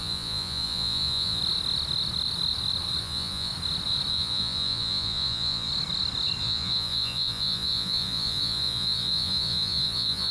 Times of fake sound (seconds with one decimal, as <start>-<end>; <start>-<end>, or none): 0.0-1.4; 3.0-3.5; 4.1-5.7; 6.4-10.3